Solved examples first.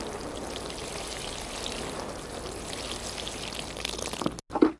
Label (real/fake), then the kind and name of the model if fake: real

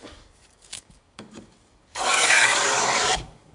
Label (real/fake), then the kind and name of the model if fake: fake, codec, DAC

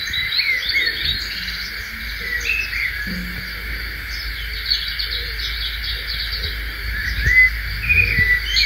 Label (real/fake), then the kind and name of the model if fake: real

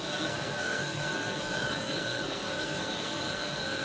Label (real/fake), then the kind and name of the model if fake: fake, codec, SNAC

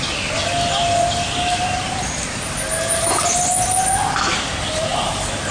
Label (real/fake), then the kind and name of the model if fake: real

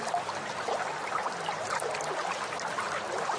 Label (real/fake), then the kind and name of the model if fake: real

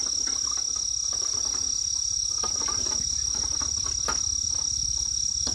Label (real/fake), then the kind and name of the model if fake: real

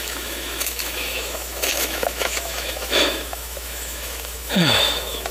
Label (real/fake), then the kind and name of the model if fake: fake, autoencoder, DAC-VAE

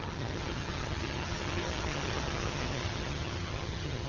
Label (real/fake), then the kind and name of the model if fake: fake, vocoder, HiFi-GAN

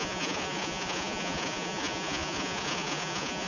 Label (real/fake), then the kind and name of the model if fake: fake, vocoder, Vocos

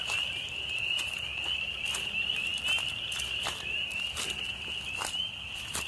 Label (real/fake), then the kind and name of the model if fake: real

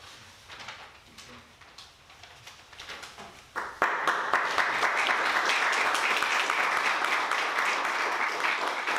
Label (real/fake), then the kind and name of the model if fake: real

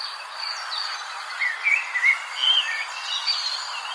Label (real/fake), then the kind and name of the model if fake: real